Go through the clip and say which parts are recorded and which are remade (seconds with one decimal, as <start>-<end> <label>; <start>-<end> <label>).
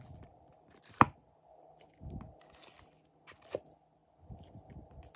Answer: 0.0-5.2 recorded